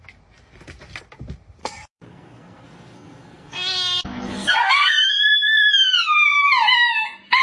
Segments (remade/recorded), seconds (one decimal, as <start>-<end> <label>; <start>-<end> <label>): 0.0-1.6 recorded; 1.6-5.1 remade; 5.1-7.4 recorded